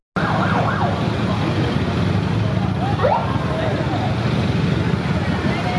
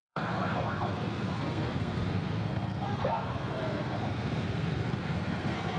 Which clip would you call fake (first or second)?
second